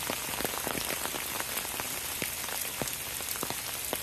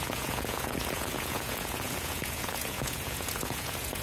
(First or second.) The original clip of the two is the first